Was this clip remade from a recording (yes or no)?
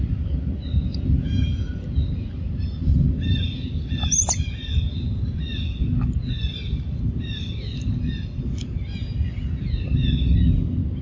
no